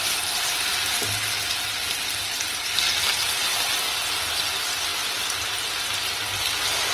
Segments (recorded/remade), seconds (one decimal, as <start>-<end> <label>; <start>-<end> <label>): 0.0-6.9 recorded